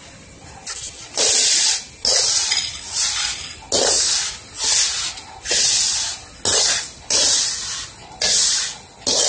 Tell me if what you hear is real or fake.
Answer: real